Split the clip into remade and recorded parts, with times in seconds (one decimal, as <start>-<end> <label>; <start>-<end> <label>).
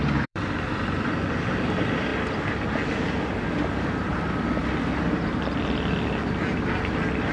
0.0-2.1 remade; 2.1-2.9 recorded; 2.9-7.3 remade